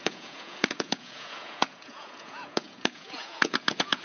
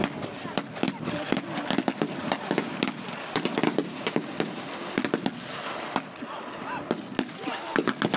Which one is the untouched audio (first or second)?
second